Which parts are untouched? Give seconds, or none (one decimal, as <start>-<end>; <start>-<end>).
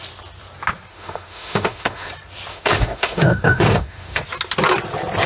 0.0-0.9; 2.1-2.5; 4.2-5.3